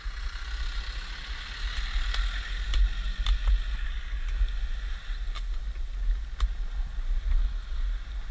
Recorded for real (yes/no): yes